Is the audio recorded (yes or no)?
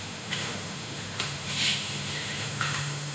no